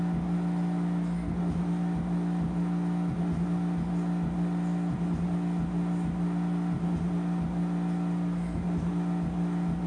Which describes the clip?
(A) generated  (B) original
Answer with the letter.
B